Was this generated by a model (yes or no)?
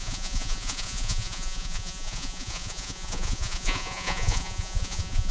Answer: yes